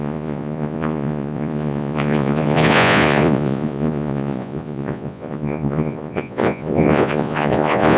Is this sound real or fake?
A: fake